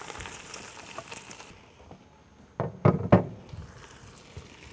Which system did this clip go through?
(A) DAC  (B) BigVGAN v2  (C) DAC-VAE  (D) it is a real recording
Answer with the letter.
D